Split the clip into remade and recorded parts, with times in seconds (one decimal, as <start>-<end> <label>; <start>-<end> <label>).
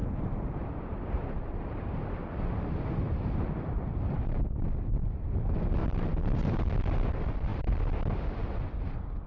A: 0.0-4.4 remade; 4.4-5.8 recorded; 5.8-6.7 remade; 6.7-9.3 recorded